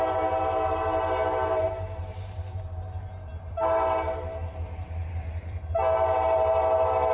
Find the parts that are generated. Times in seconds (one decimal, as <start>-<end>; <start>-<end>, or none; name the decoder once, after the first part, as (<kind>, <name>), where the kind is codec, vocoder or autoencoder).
0.0-7.1 (vocoder, BigVGAN v2)

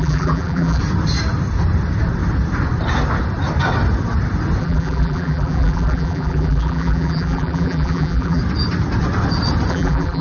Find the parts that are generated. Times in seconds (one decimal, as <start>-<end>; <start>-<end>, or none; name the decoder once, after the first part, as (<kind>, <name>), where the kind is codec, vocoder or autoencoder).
0.0-0.8 (vocoder, BigVGAN v2); 4.6-8.4; 9.7-10.2

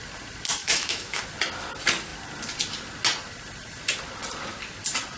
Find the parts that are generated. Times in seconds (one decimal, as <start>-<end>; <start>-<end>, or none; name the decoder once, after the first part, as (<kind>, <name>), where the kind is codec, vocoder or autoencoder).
0.6-1.2 (autoencoder, DAC-VAE)

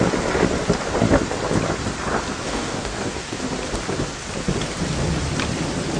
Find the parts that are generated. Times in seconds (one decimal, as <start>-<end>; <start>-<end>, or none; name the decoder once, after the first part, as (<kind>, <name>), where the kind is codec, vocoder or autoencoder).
2.4-3.4 (codec, DAC)

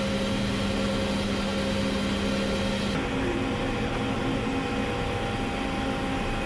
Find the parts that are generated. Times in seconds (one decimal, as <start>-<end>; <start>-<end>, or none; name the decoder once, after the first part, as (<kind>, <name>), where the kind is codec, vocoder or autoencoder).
none

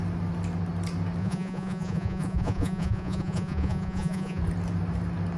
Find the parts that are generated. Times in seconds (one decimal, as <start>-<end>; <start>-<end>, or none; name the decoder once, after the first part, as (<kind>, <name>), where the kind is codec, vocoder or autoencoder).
1.2-4.4 (vocoder, Vocos)

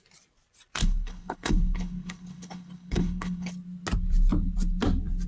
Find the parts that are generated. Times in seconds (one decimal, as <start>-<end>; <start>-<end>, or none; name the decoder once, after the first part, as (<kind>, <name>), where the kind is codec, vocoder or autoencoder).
0.8-3.5 (codec, HILCodec)